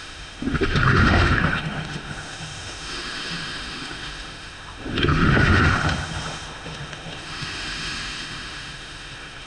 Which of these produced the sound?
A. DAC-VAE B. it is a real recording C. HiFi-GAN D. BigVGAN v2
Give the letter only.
A